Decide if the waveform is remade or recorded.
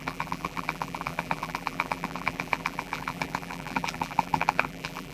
remade